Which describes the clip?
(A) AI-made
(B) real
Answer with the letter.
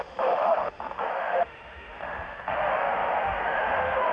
A